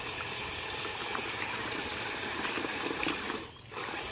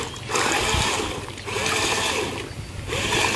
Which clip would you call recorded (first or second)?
second